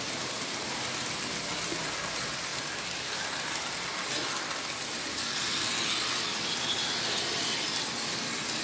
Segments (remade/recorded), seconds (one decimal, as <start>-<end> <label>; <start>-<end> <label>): 0.0-8.6 recorded